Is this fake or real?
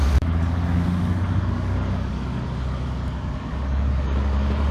fake